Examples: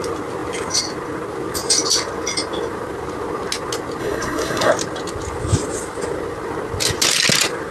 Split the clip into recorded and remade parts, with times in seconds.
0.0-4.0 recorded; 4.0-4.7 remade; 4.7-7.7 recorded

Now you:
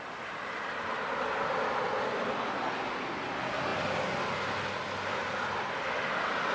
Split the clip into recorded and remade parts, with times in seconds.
0.0-6.5 recorded

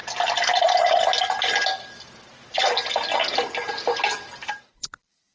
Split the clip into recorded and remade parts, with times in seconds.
0.0-5.3 recorded